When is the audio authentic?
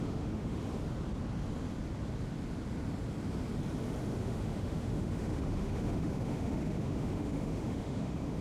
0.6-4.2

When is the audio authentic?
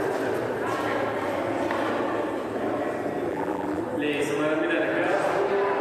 0.0-3.3; 3.8-5.8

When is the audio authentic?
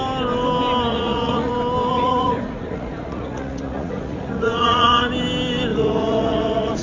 0.0-0.9; 1.5-1.9; 5.1-5.7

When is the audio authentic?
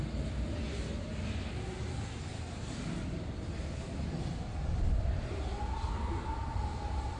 0.0-7.2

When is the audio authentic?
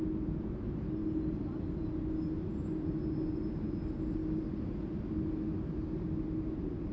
0.0-6.9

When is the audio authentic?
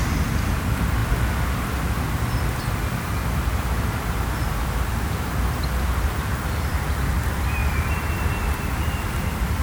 1.0-6.0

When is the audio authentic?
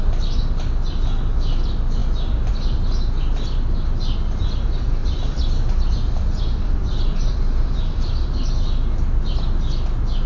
0.0-5.0; 8.5-10.3